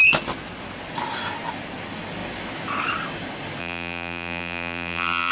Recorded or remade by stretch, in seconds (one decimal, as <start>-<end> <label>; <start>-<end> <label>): 0.0-3.6 recorded; 3.6-5.3 remade